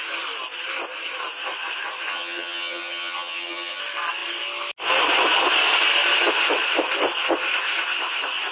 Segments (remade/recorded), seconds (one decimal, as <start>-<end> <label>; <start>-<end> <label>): 0.0-2.1 recorded; 2.1-3.8 remade; 3.8-8.5 recorded